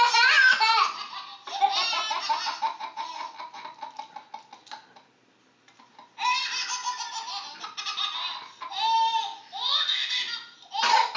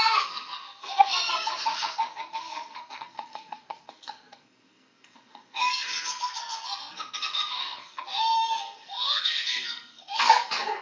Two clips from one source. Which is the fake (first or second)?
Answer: second